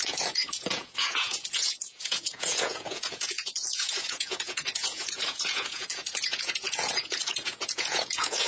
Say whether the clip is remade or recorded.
remade